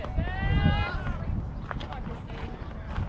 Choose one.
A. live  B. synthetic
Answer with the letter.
A